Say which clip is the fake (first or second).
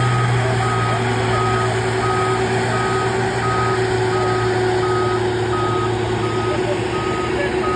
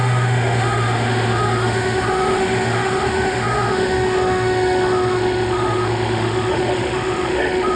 second